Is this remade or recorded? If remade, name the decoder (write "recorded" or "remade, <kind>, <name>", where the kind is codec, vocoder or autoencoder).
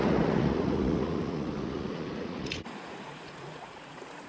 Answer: remade, vocoder, Vocos